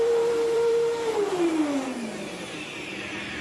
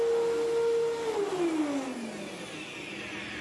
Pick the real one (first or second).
second